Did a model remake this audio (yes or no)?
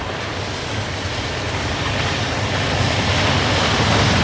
no